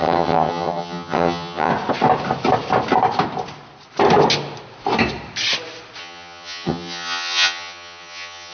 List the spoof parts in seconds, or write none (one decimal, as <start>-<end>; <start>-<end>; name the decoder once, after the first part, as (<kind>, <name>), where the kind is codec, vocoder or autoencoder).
0.0-1.7 (vocoder, HiFi-GAN); 6.0-8.5